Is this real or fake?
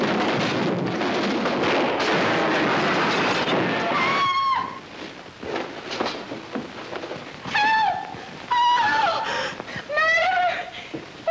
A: real